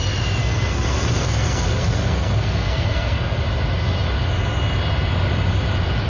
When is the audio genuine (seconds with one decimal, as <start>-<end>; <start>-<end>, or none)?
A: 0.0-0.4; 3.4-6.1